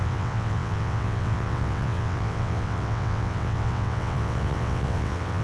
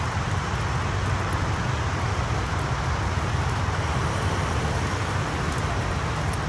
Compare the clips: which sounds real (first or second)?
second